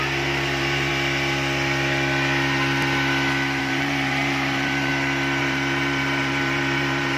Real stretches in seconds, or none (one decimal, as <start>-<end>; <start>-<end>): 0.9-3.6; 4.9-5.4